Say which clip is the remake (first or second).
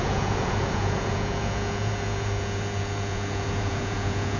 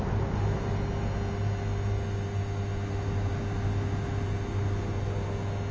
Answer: first